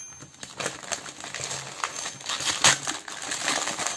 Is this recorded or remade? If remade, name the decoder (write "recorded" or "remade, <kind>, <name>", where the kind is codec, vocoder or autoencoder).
recorded